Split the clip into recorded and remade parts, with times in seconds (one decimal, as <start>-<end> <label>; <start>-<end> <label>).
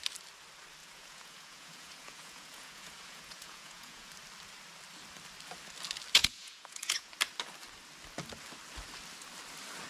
0.0-0.8 recorded; 0.8-4.1 remade; 4.1-6.2 recorded; 6.2-7.1 remade; 7.1-9.9 recorded